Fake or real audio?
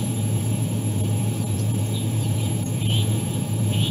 fake